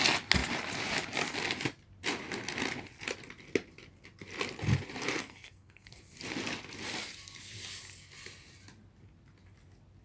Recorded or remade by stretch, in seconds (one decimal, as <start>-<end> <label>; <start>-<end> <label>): 0.0-5.2 recorded; 5.2-6.0 remade; 6.0-10.0 recorded